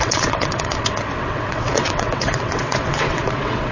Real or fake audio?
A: fake